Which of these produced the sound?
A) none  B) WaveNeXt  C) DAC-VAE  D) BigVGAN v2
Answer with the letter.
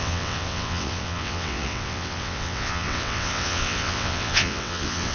B